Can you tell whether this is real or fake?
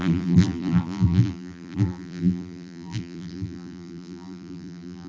fake